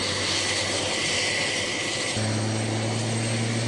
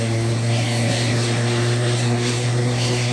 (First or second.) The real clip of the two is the first